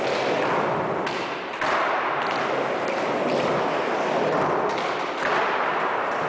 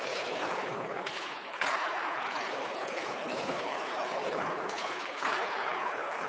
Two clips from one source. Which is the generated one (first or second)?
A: second